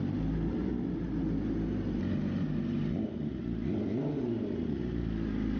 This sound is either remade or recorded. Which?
recorded